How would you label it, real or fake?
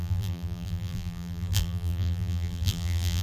fake